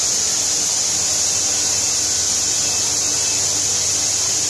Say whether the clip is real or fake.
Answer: real